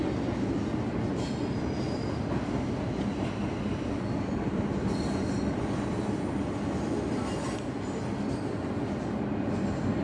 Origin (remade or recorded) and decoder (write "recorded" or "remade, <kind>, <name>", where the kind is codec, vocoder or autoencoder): recorded